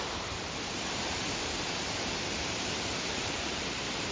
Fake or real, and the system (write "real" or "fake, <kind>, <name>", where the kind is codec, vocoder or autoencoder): fake, vocoder, BigVGAN v2